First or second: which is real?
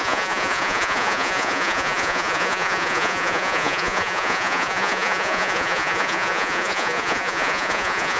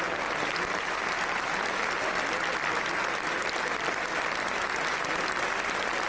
second